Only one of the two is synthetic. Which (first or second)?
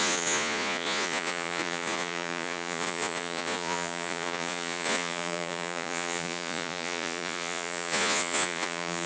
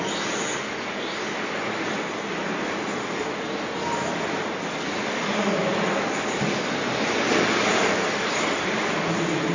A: first